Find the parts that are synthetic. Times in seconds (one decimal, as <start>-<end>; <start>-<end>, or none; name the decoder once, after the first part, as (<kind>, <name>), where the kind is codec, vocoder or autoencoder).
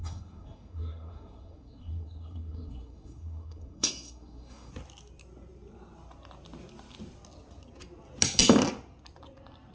0.0-4.7 (codec, SNAC)